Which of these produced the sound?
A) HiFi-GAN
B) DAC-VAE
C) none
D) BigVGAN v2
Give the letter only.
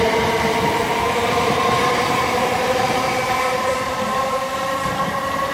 D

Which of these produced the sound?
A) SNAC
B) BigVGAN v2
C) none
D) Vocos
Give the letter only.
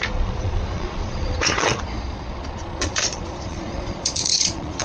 D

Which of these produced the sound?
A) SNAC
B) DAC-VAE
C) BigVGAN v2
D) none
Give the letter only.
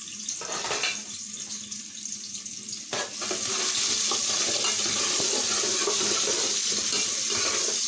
D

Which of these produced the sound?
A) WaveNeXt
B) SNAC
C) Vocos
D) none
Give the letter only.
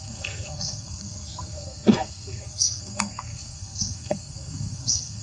B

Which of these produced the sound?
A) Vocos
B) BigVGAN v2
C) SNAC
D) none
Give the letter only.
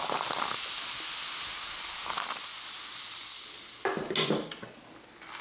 D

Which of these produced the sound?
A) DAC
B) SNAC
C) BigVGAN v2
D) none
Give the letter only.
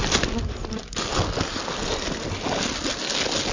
D